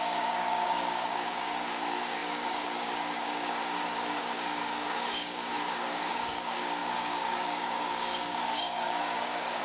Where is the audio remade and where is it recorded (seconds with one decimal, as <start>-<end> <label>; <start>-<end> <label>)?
0.0-9.6 remade